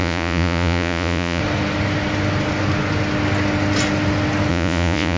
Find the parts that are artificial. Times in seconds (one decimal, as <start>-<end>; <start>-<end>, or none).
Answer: 0.0-1.4; 4.5-5.2